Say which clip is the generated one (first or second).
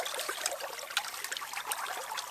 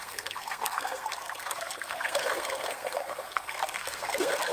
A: second